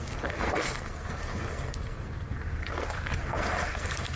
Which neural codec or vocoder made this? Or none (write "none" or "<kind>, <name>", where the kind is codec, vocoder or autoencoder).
codec, SNAC